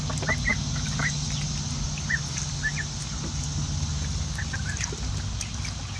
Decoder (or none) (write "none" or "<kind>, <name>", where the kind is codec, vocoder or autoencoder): none